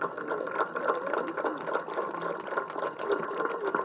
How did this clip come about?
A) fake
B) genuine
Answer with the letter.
B